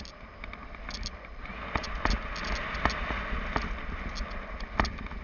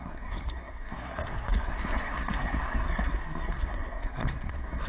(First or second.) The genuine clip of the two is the first